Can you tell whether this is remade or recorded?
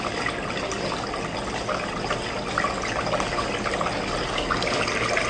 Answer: recorded